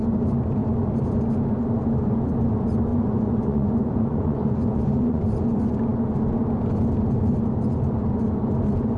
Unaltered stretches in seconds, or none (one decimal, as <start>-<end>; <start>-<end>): 0.0-2.9; 5.2-9.0

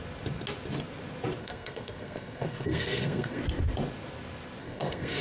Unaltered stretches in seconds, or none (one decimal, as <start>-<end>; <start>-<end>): 0.0-1.4; 3.4-4.6